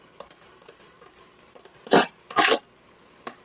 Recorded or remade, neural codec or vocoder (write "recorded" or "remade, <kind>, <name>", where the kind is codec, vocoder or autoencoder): remade, vocoder, BigVGAN v2